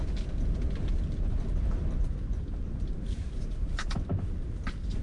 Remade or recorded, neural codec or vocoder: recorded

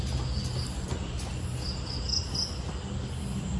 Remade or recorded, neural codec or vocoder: recorded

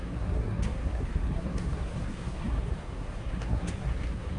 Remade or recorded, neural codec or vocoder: remade, codec, SNAC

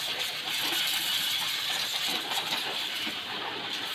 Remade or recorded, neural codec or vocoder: remade, vocoder, BigVGAN v2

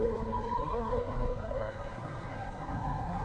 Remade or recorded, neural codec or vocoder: remade, codec, SNAC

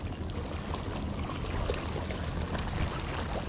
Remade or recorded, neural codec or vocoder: recorded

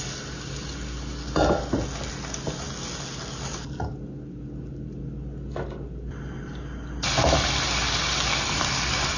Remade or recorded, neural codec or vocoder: recorded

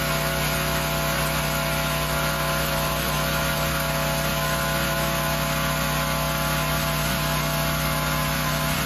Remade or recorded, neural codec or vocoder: recorded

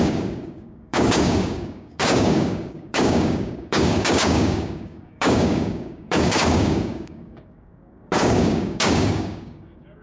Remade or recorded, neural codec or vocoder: remade, codec, DAC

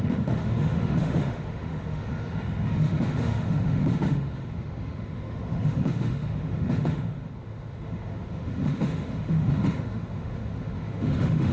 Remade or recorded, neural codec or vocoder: remade, autoencoder, DAC-VAE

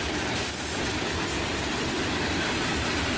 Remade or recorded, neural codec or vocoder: remade, vocoder, BigVGAN v2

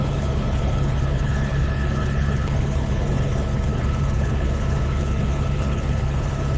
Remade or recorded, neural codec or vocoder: remade, codec, HILCodec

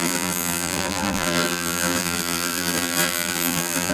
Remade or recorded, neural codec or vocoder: remade, vocoder, BigVGAN v2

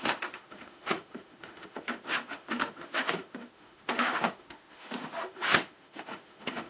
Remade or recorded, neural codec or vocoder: remade, autoencoder, DAC-VAE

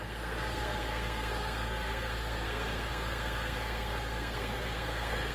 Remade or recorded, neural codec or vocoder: remade, codec, SNAC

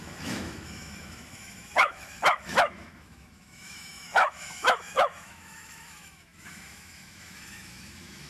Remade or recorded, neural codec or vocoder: remade, autoencoder, DAC-VAE